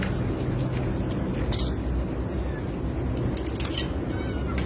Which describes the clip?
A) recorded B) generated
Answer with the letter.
A